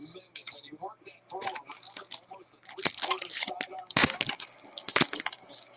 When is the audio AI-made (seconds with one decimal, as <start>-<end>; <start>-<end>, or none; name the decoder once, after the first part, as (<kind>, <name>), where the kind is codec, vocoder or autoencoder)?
0.0-0.6 (codec, DAC); 3.8-5.8